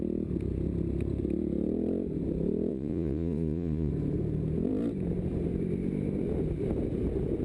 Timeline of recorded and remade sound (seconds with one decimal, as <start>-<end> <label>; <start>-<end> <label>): 0.0-2.7 recorded; 2.7-3.9 remade; 3.9-7.4 recorded